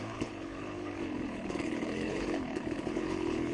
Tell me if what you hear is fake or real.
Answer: fake